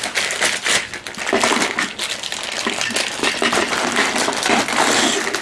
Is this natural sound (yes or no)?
yes